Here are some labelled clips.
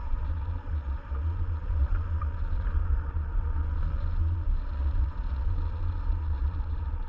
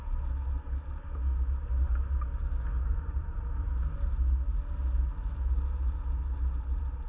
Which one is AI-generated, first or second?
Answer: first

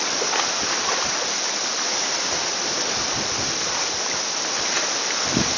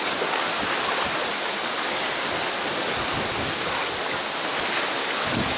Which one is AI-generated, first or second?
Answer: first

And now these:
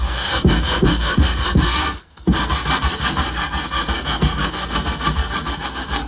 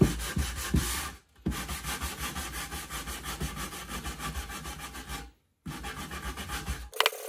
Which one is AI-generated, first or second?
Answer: first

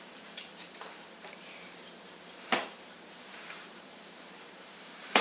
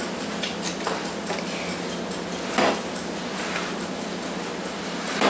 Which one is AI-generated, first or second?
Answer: first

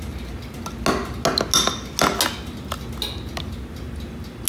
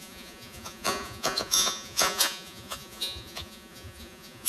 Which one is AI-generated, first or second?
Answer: second